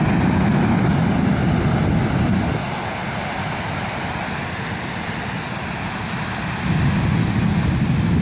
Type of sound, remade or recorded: recorded